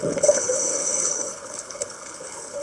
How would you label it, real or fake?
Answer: fake